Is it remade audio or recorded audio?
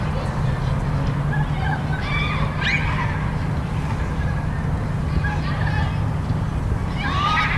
recorded